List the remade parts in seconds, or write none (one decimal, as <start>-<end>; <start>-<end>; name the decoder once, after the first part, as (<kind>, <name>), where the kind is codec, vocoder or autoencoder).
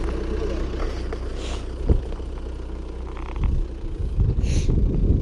none